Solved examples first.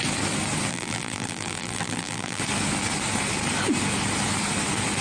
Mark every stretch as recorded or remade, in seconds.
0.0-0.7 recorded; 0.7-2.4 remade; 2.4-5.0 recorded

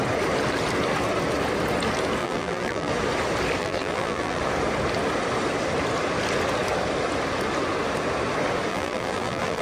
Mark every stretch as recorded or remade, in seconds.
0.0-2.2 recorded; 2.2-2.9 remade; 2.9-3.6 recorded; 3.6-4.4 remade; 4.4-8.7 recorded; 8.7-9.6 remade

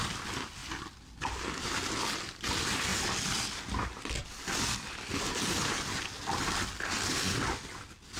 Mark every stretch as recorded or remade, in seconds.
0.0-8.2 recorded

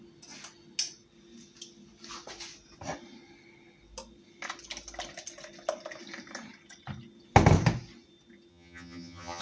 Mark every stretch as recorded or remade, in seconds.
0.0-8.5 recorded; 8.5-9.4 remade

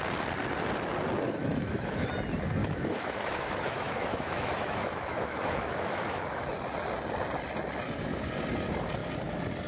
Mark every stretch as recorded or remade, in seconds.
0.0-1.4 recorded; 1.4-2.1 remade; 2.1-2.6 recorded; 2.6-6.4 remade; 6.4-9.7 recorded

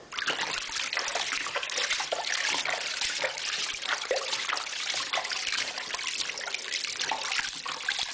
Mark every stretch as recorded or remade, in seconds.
0.0-1.1 recorded; 1.1-5.9 remade; 5.9-8.1 recorded

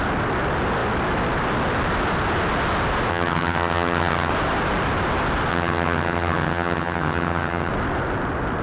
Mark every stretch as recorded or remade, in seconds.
0.0-3.1 recorded; 3.1-4.3 remade; 4.3-5.5 recorded; 5.5-7.7 remade; 7.7-8.6 recorded